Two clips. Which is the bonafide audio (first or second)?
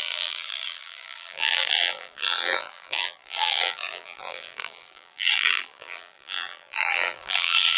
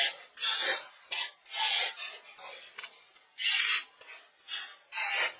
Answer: second